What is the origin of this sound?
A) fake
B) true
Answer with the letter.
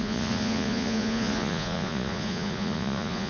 A